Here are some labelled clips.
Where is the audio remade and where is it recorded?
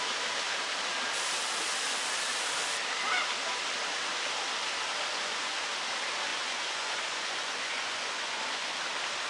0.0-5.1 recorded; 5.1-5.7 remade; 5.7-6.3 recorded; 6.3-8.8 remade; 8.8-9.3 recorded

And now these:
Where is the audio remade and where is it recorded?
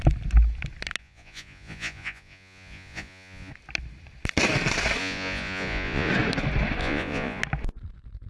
0.0-1.0 recorded; 1.0-3.5 remade; 3.5-5.0 recorded; 5.0-6.1 remade; 6.1-6.8 recorded; 6.8-7.4 remade; 7.4-8.3 recorded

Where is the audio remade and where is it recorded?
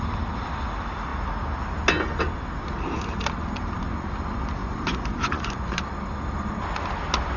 0.0-4.6 recorded; 4.6-5.8 remade; 5.8-7.4 recorded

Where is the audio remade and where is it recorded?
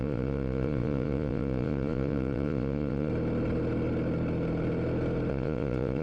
0.0-3.1 remade; 3.1-5.3 recorded; 5.3-6.0 remade